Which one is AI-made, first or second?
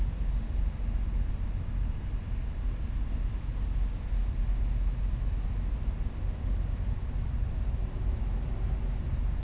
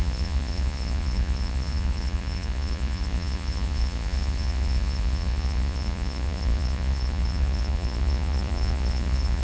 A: second